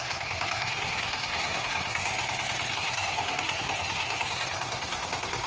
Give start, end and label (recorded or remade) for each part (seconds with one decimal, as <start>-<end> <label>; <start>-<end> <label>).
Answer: 0.0-2.1 remade; 2.1-2.7 recorded; 2.7-5.5 remade